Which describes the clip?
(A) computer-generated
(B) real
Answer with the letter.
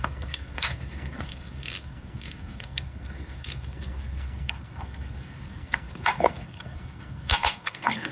A